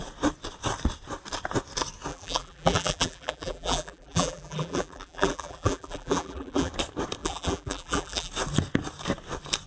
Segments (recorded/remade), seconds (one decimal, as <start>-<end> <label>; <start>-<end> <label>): 0.0-2.1 recorded; 2.1-6.7 remade; 6.7-7.2 recorded; 7.2-8.3 remade; 8.3-9.7 recorded